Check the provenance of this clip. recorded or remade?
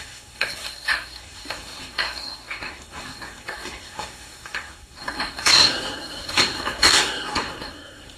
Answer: remade